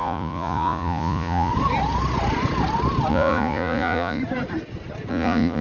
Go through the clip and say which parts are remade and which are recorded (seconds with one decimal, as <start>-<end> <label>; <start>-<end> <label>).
0.0-1.5 remade; 1.5-3.1 recorded; 3.1-4.2 remade; 4.2-5.1 recorded; 5.1-5.6 remade